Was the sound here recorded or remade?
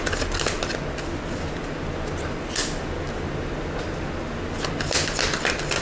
recorded